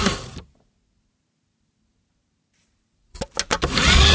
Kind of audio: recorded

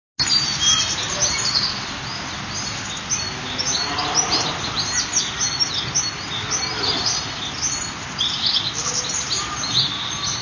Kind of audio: recorded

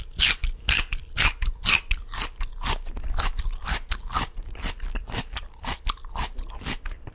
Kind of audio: recorded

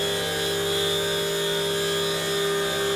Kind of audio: recorded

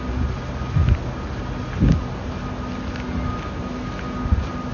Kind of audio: recorded